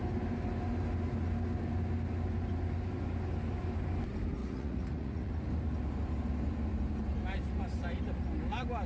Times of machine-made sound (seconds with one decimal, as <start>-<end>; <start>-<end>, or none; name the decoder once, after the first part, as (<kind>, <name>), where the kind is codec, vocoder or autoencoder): 4.4-5.3 (vocoder, Vocos)